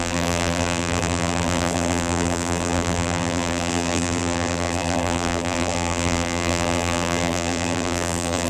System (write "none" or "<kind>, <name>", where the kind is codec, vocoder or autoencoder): vocoder, BigVGAN v2